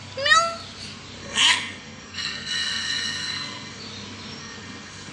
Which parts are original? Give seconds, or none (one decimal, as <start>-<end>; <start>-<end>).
0.0-1.2; 3.8-4.4